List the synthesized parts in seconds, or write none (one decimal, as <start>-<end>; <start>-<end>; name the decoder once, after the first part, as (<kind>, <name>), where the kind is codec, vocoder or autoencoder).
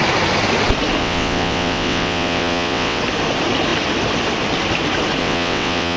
1.0-3.0 (vocoder, WaveNeXt); 5.2-6.0